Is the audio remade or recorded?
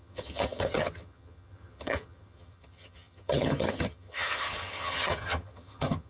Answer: remade